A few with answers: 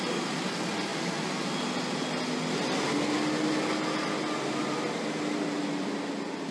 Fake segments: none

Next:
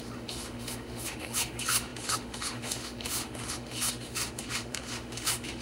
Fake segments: 0.0-5.6 (autoencoder, DAC-VAE)

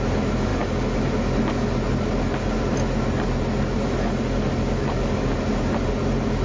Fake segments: none

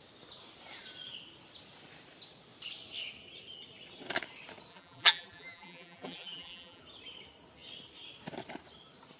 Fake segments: 4.7-6.8 (vocoder, BigVGAN v2)

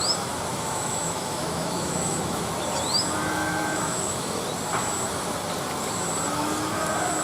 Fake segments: 0.5-2.6 (autoencoder, DAC-VAE); 3.4-4.4

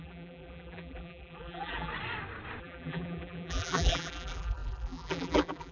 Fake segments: 0.0-1.9 (vocoder, BigVGAN v2); 2.6-5.7